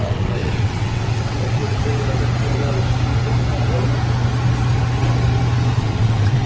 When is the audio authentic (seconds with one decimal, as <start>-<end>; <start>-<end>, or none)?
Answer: 1.9-5.8